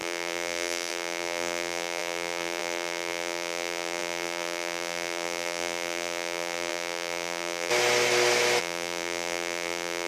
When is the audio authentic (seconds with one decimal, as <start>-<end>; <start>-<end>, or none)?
7.7-8.6